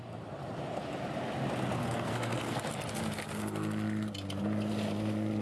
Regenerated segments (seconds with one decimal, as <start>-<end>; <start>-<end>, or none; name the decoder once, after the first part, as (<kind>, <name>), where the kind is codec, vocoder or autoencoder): 1.8-2.7 (codec, SNAC)